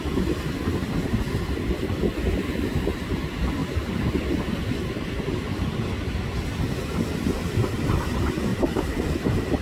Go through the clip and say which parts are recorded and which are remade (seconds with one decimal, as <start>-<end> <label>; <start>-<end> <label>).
0.0-9.6 recorded